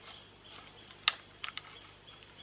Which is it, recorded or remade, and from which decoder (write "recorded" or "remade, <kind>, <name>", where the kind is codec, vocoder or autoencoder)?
recorded